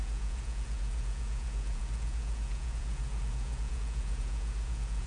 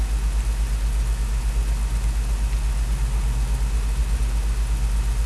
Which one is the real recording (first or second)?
second